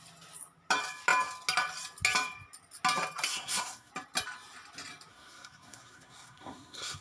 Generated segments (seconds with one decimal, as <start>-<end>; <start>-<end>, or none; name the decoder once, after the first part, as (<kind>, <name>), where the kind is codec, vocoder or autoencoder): 3.3-3.9 (codec, SNAC); 5.1-7.0